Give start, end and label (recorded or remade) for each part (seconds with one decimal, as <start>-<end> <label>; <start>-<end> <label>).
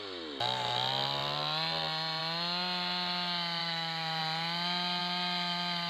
0.0-3.6 recorded; 3.6-4.2 remade; 4.2-5.9 recorded